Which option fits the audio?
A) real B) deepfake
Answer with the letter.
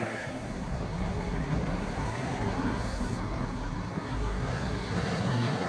B